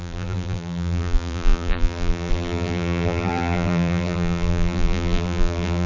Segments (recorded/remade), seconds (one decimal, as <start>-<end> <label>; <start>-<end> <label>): 0.0-5.9 remade